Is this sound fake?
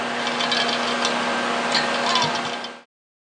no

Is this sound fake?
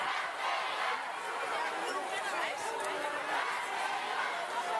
no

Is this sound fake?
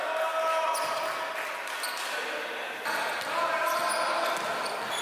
no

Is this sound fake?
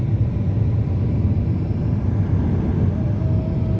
no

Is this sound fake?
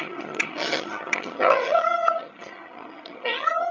yes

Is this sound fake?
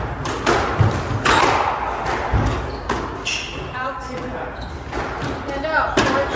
no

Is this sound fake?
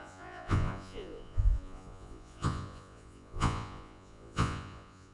yes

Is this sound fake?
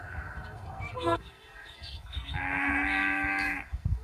yes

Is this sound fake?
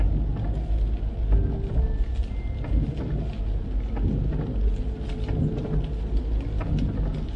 no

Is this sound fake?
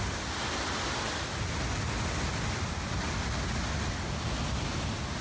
no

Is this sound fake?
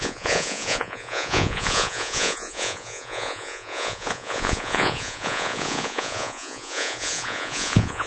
yes